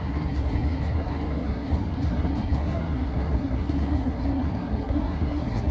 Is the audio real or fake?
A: fake